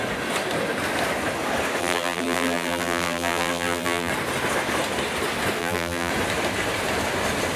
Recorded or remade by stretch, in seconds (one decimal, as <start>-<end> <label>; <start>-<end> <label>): 0.0-1.8 recorded; 1.8-4.1 remade; 4.1-5.6 recorded; 5.6-6.1 remade; 6.1-7.6 recorded